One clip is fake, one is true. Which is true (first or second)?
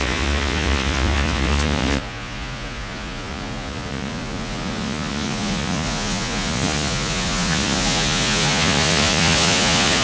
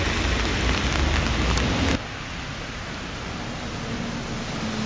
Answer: second